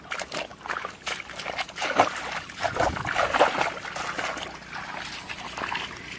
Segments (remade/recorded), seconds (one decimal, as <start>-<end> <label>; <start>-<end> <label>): 0.0-6.2 recorded